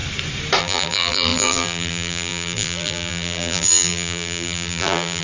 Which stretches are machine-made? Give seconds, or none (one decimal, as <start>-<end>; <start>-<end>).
0.6-5.2